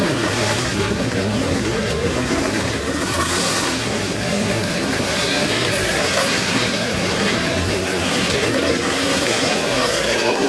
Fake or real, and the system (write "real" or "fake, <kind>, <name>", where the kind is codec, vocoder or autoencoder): fake, codec, SNAC